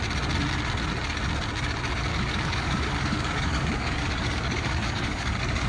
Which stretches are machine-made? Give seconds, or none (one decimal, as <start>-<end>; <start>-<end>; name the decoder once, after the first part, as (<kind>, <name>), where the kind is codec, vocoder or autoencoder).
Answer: 2.1-5.7 (codec, DAC)